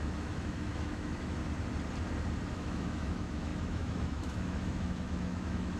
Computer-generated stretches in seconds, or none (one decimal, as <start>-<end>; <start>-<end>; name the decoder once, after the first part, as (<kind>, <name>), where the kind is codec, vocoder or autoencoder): 0.0-1.4 (autoencoder, DAC-VAE); 2.5-5.8